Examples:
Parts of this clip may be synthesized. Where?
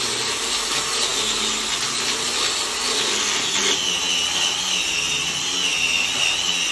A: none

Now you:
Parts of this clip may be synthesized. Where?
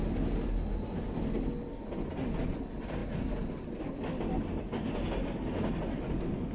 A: none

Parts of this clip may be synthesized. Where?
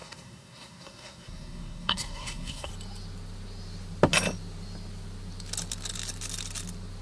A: 0.0-2.7 (codec, SNAC)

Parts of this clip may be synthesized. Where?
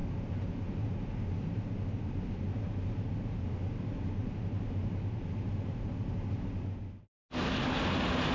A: none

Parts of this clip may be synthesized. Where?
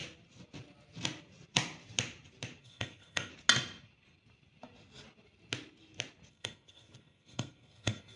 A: 2.6-3.3 (codec, SNAC); 6.3-8.2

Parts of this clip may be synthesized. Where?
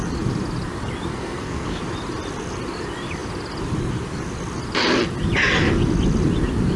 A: 1.1-1.8 (codec, SNAC)